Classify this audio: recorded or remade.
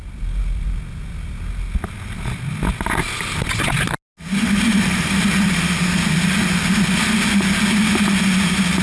recorded